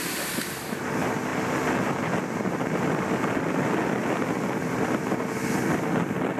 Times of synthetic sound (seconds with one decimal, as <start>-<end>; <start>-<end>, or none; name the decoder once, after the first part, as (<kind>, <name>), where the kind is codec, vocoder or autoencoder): none